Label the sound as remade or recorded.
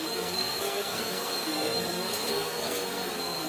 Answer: remade